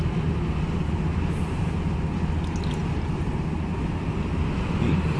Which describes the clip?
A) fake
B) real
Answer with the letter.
B